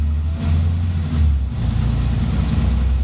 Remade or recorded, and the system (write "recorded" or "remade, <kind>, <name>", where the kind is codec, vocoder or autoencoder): recorded